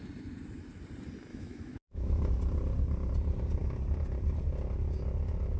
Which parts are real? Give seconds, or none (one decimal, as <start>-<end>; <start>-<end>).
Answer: 0.0-1.3; 2.3-5.6